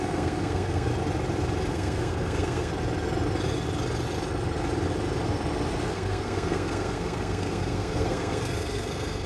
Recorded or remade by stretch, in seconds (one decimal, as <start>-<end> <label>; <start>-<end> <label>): 0.0-0.9 remade; 0.9-1.7 recorded; 1.7-2.7 remade; 2.7-5.9 recorded; 5.9-9.3 remade